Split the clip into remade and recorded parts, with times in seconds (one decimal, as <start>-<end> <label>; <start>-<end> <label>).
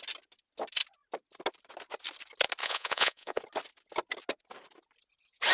0.0-2.6 recorded; 2.6-3.4 remade; 3.4-5.5 recorded